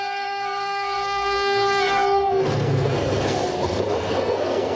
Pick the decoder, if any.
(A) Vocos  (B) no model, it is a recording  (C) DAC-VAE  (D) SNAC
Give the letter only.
D